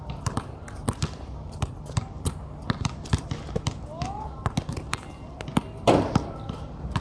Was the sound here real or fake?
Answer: real